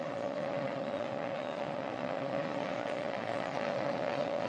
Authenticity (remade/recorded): remade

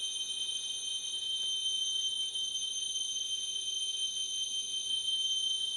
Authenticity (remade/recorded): recorded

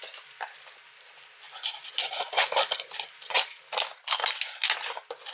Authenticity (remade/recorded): recorded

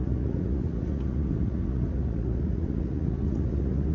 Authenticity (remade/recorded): remade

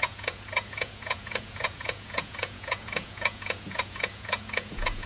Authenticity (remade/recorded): remade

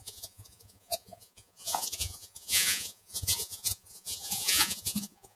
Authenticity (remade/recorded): remade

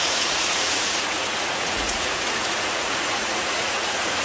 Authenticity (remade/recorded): remade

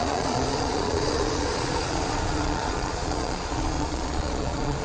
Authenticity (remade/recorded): remade